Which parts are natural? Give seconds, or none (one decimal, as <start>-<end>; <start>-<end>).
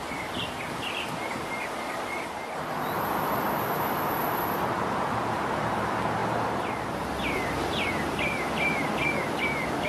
0.0-9.9